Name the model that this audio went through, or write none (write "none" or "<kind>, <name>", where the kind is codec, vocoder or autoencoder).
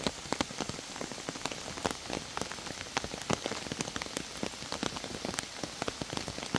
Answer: none